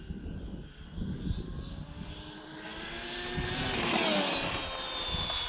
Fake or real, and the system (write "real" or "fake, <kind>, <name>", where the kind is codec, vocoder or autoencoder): real